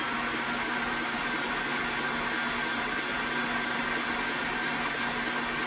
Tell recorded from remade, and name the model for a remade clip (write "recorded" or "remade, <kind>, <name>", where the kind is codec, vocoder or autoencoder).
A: recorded